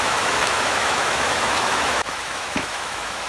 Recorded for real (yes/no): no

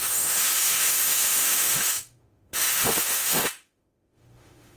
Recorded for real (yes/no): no